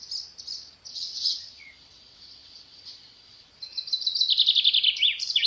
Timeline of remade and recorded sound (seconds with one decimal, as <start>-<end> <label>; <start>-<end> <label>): 0.0-0.9 recorded; 0.9-3.5 remade; 3.5-5.5 recorded